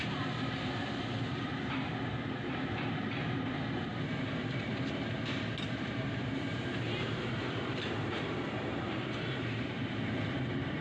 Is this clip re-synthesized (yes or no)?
yes